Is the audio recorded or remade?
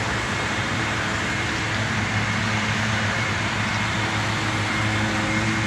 remade